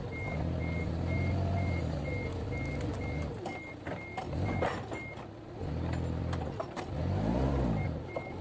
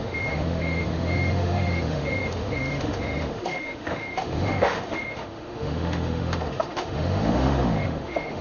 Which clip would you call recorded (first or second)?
first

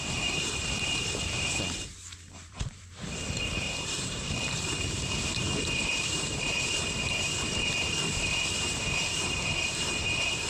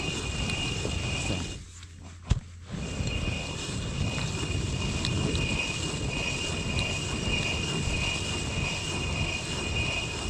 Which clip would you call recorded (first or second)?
second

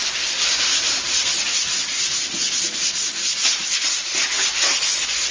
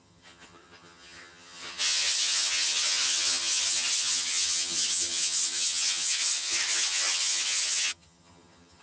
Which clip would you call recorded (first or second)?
first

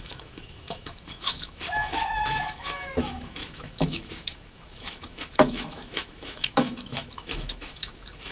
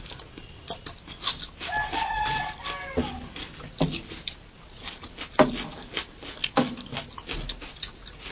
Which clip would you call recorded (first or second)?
second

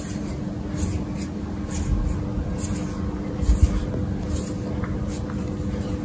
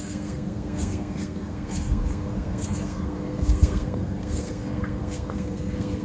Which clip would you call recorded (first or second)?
first